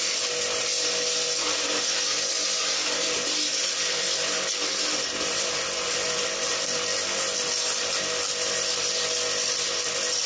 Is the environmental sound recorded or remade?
recorded